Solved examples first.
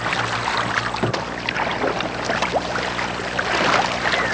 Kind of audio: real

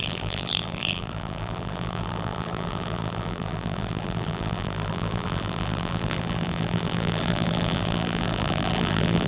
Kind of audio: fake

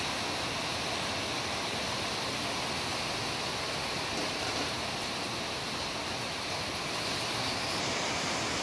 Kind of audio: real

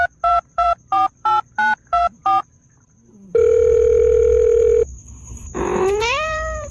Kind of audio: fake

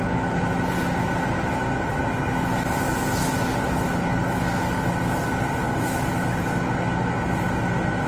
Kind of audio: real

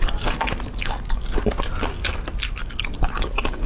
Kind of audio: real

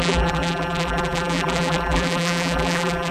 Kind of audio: fake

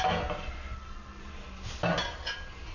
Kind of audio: real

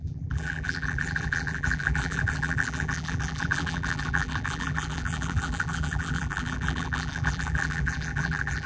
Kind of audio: fake